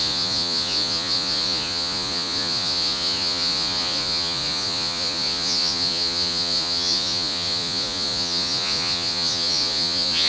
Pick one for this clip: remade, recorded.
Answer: remade